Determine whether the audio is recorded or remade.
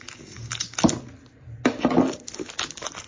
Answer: recorded